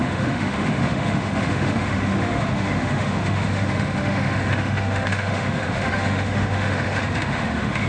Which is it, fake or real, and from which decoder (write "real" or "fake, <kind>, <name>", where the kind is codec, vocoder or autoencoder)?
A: fake, autoencoder, DAC-VAE